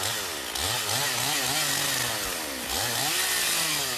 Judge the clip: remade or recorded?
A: recorded